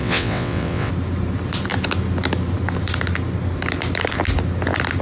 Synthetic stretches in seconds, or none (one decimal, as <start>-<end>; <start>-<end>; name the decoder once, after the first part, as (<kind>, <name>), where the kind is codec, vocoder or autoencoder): 0.0-0.9 (vocoder, WaveNeXt)